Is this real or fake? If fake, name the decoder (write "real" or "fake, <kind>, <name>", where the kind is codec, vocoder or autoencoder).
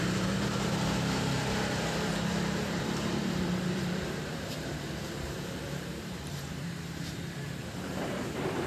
fake, vocoder, BigVGAN v2